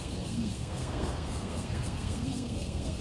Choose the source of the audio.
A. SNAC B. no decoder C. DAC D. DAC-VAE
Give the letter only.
A